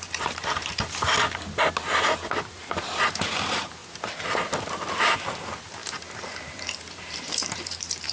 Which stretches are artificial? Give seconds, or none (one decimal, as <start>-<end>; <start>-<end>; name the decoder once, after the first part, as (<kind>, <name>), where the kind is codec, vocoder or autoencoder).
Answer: 0.0-0.7 (vocoder, BigVGAN v2); 2.5-3.8; 4.9-5.8; 6.4-8.1